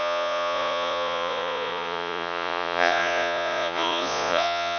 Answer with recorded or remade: remade